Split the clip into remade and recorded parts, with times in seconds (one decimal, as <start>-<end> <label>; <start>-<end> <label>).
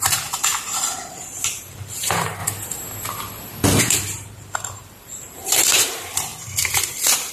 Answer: 0.0-0.5 remade; 0.5-1.1 recorded; 1.1-2.4 remade; 2.4-3.8 recorded; 3.8-6.3 remade; 6.3-7.3 recorded